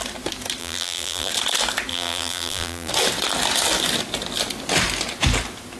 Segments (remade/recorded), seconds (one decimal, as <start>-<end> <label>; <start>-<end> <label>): 0.0-0.6 recorded; 0.6-1.3 remade; 1.3-1.9 recorded; 1.9-2.9 remade; 2.9-5.8 recorded